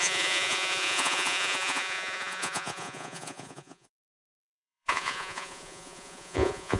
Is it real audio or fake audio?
fake